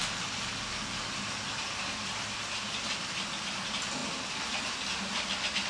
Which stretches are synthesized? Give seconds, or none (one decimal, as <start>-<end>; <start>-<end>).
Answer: none